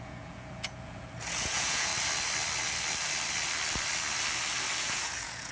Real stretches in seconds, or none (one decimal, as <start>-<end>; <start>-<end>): 1.9-4.8